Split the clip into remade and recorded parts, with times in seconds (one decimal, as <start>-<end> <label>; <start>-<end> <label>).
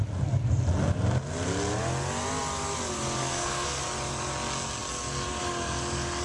0.0-3.2 recorded; 3.2-3.8 remade; 3.8-6.2 recorded